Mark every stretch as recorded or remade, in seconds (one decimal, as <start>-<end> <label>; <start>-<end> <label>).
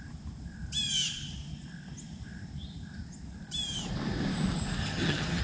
0.0-4.8 recorded; 4.8-5.4 remade